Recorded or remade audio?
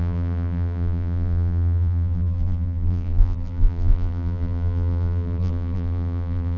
remade